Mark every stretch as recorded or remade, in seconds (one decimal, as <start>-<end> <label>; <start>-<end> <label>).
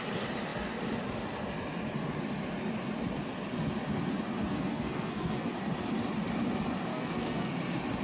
0.0-4.5 recorded; 4.5-5.5 remade; 5.5-6.9 recorded; 6.9-7.5 remade; 7.5-8.0 recorded